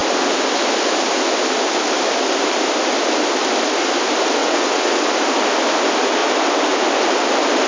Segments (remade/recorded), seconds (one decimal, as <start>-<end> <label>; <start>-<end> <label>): 0.0-4.4 recorded; 4.4-5.1 remade; 5.1-7.7 recorded